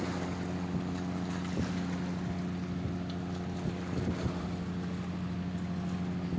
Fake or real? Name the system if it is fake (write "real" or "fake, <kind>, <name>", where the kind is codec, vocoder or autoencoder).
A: real